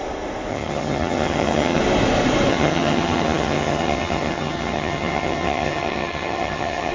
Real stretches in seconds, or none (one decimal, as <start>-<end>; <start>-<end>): 0.0-0.5; 1.8-2.5